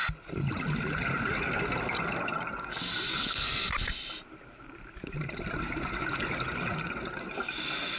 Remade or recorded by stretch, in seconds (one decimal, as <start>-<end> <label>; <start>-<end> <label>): 0.0-3.1 recorded; 3.1-3.7 remade; 3.7-8.0 recorded